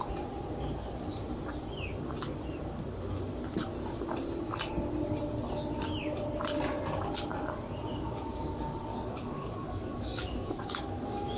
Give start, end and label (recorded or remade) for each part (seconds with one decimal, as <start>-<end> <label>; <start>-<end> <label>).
0.0-7.9 recorded; 7.9-11.4 remade